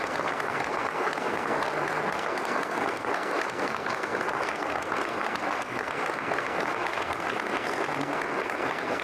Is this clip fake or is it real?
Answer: fake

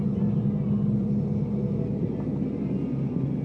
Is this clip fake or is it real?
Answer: real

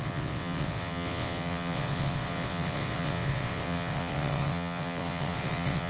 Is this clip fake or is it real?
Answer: fake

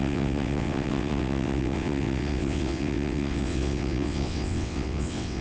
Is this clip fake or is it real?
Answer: fake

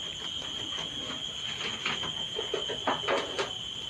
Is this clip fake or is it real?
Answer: real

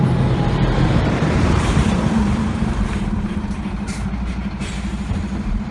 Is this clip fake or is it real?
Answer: fake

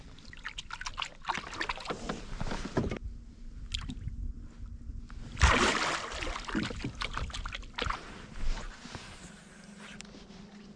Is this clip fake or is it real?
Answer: real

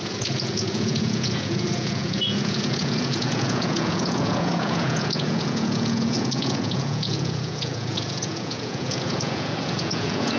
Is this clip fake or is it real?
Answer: fake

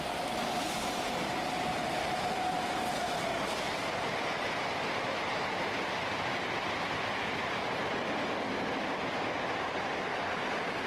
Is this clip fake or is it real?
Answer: fake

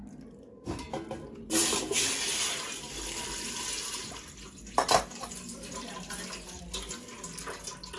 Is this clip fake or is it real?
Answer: real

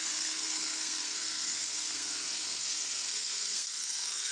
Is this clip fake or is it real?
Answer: fake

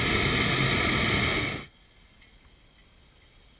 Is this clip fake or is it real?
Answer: real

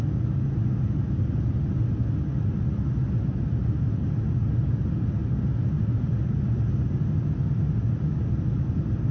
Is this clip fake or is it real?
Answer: real